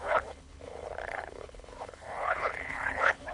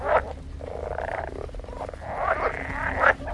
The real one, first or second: second